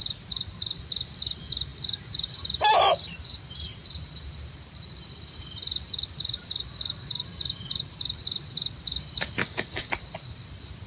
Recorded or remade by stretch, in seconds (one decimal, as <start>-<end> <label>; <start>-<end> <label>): 0.0-9.4 recorded; 9.4-9.9 remade; 9.9-10.9 recorded